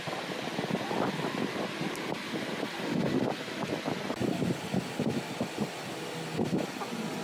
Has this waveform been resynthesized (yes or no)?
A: no